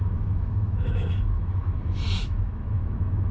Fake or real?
fake